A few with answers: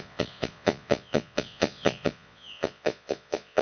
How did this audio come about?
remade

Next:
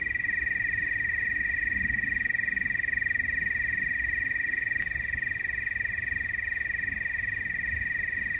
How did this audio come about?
recorded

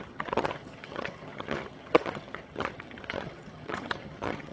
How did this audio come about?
remade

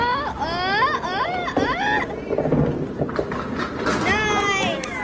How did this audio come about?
recorded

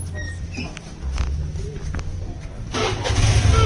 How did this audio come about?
recorded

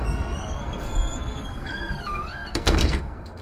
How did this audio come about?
remade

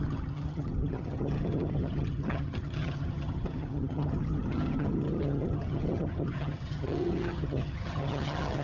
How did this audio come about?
remade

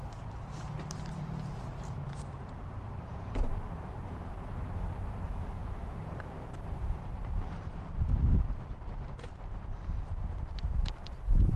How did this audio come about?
remade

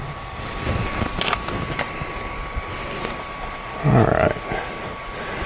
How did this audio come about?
recorded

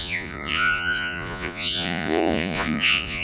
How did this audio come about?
remade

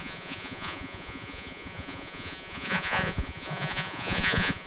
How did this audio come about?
remade